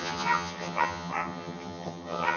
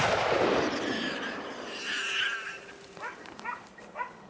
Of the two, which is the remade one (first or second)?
first